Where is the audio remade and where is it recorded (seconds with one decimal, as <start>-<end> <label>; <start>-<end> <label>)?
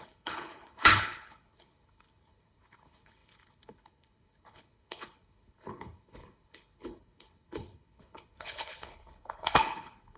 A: 0.0-10.2 remade